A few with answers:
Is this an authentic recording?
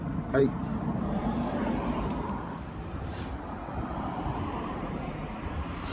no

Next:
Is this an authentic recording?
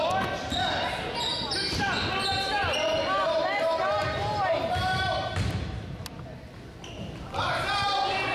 yes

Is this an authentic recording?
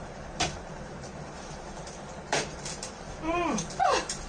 no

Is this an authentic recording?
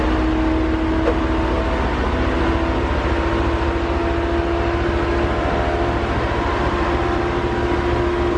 yes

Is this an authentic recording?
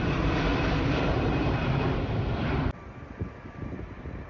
no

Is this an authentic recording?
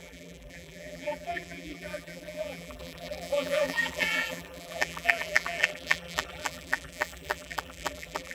no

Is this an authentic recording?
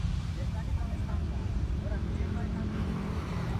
no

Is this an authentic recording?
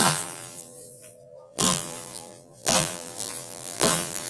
no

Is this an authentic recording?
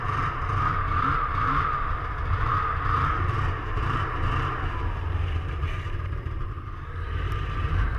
no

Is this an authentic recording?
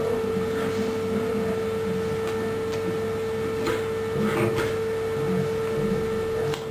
yes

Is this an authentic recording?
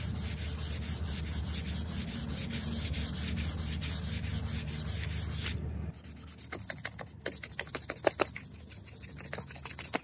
yes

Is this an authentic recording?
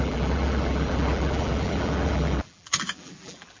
no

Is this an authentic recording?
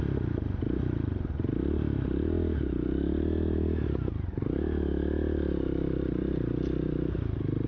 yes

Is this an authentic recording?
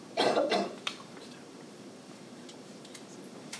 no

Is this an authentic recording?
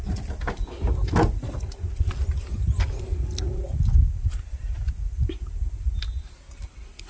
yes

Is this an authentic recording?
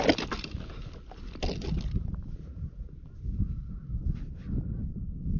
yes